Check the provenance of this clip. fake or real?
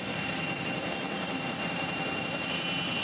real